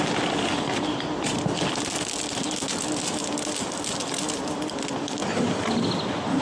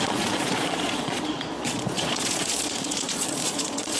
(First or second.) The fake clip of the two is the second